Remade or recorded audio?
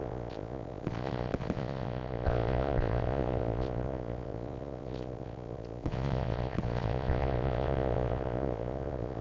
remade